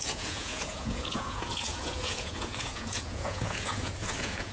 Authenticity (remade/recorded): remade